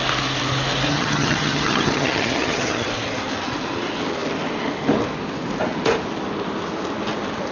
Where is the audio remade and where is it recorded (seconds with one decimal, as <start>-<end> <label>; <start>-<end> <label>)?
0.0-0.9 recorded; 0.9-2.9 remade; 2.9-7.5 recorded

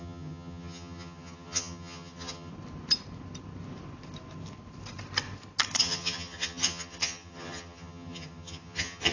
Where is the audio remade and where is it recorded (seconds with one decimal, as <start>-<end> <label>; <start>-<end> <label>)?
0.0-2.5 remade; 2.5-5.8 recorded; 5.8-9.1 remade

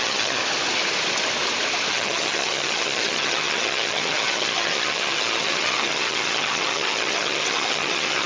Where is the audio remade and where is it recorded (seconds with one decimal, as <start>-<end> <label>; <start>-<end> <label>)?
0.0-0.4 remade; 0.4-1.9 recorded; 1.9-8.3 remade

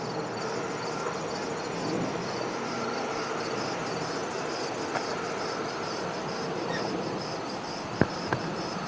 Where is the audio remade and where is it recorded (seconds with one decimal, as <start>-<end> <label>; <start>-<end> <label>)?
0.0-8.9 recorded

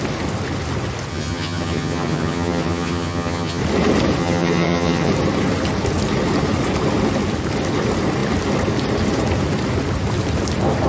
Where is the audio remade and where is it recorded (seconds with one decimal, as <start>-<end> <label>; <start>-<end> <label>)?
0.0-1.1 recorded; 1.1-3.6 remade; 3.6-4.2 recorded; 4.2-5.1 remade; 5.1-10.9 recorded